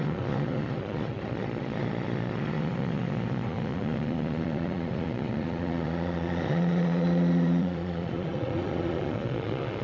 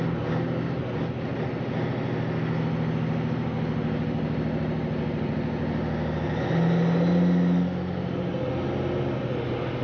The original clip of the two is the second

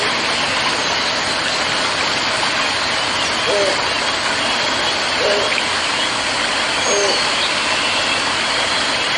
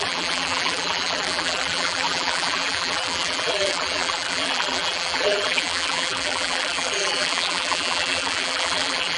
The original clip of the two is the first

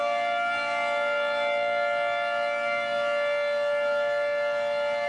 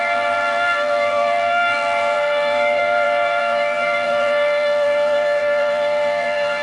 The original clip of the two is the first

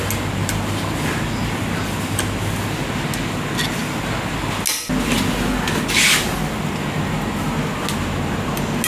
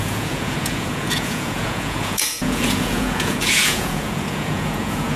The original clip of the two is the first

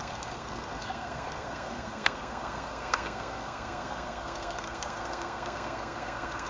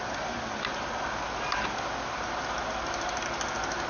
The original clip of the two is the second